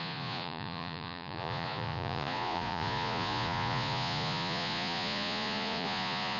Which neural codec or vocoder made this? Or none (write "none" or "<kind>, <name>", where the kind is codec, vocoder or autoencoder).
vocoder, Vocos